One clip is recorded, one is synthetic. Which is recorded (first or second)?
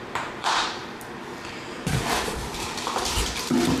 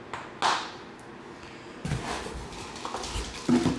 second